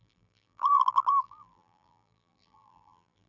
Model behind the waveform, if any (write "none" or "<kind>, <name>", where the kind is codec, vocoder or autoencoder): vocoder, BigVGAN v2